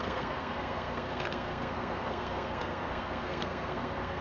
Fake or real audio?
fake